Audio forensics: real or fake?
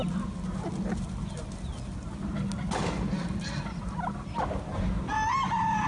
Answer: real